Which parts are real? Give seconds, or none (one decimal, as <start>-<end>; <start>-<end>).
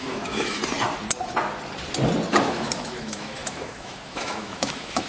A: 0.6-2.4